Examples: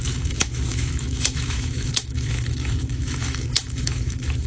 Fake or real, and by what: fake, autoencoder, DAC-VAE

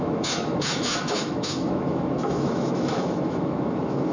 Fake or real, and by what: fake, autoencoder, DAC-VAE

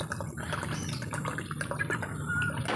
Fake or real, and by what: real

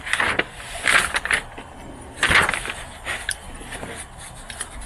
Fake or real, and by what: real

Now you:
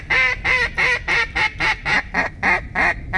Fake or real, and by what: real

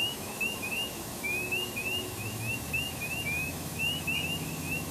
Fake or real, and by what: fake, autoencoder, DAC-VAE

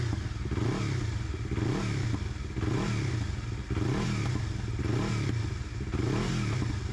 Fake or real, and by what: real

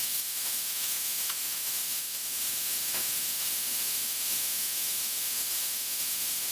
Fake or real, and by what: fake, autoencoder, DAC-VAE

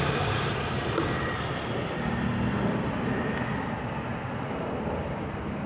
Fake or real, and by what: real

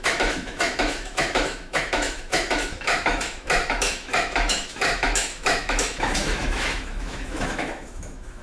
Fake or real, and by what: fake, autoencoder, DAC-VAE